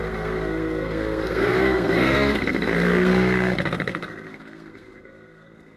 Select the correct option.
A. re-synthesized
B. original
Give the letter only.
A